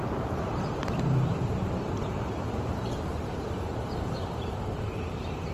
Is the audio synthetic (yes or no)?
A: yes